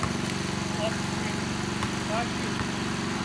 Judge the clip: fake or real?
real